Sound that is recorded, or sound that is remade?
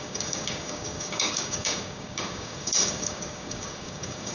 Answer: remade